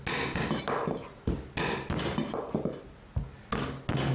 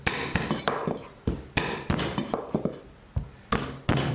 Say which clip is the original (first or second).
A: first